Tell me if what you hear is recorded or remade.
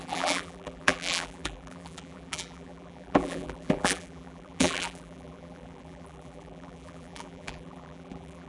remade